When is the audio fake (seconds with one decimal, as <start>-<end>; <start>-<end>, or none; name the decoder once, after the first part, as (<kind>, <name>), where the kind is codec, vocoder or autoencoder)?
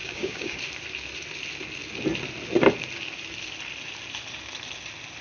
0.0-0.6 (codec, DAC)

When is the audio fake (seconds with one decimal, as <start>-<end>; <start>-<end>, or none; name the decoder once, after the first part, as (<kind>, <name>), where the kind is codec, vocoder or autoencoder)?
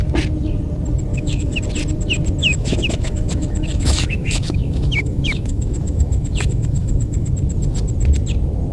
1.1-1.6 (autoencoder, DAC-VAE); 2.4-7.3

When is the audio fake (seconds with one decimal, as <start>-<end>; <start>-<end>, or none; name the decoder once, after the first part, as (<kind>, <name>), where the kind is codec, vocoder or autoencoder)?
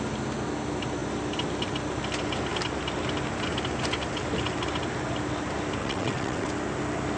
5.8-6.5 (vocoder, WaveNeXt)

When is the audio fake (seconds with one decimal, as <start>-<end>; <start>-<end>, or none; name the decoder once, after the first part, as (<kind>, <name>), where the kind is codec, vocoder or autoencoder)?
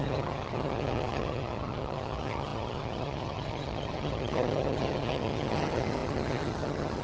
0.0-7.0 (vocoder, HiFi-GAN)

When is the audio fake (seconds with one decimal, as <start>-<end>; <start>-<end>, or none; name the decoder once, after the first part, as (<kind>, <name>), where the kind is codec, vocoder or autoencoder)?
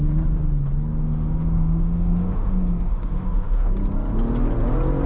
1.0-3.7 (autoencoder, DAC-VAE)